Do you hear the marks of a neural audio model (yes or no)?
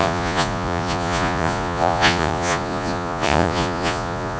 yes